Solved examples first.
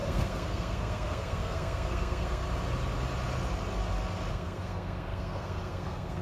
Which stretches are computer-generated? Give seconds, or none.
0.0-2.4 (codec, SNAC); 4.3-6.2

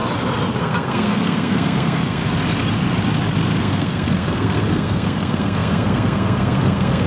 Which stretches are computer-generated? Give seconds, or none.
0.6-2.2 (codec, SNAC); 3.6-7.1

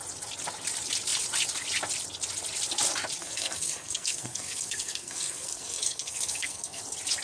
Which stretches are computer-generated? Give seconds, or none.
3.2-6.8 (codec, SNAC)

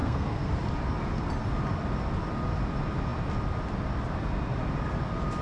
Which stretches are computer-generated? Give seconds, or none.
0.0-0.5 (codec, SNAC)

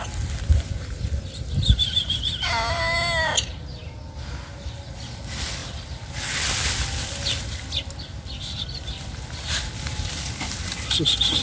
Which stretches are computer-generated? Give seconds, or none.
none

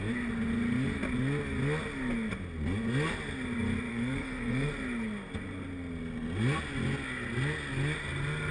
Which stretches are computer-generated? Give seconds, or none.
3.9-4.7 (codec, SNAC)

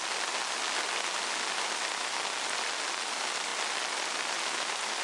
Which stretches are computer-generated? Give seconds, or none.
none